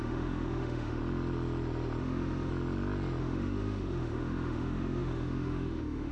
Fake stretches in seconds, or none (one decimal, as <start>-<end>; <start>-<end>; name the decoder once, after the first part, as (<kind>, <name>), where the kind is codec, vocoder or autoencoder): 0.0-1.0 (autoencoder, DAC-VAE); 2.0-2.5; 3.2-6.1